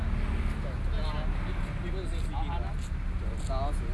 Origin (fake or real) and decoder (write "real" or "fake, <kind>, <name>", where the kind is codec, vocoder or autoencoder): real